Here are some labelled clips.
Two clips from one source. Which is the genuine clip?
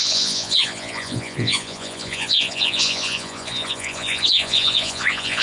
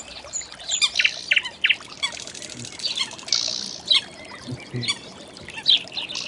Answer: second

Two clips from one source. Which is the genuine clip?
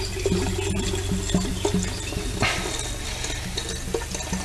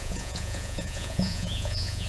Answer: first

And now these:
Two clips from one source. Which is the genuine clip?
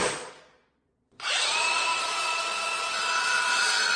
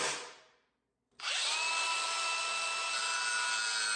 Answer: second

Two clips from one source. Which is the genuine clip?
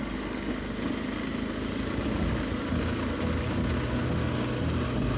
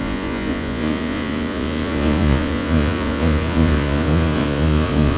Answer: first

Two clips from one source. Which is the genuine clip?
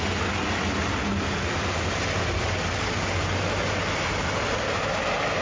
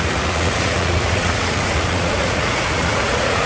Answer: first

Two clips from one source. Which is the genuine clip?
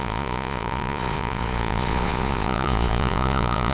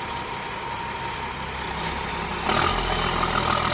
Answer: second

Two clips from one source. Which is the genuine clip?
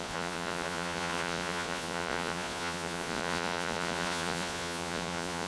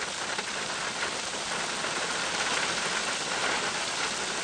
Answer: second